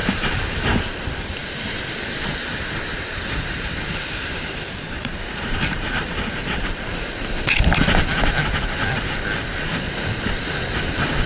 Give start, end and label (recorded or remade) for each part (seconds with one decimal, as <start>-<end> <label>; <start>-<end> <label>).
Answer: 0.0-0.8 remade; 0.8-2.9 recorded; 2.9-7.1 remade; 7.1-11.3 recorded